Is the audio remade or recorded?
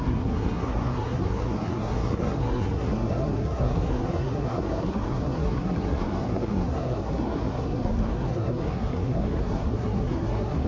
remade